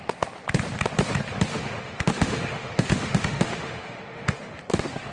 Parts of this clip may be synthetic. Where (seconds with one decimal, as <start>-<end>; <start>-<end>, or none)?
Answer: 1.5-4.6